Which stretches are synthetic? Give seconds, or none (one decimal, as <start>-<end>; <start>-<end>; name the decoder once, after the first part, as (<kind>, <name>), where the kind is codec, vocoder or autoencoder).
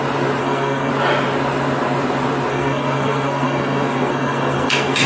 0.4-0.9 (codec, SNAC); 2.5-5.1